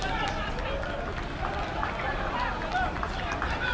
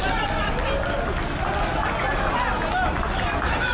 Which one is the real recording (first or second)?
second